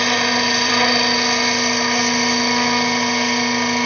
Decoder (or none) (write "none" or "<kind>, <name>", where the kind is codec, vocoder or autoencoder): none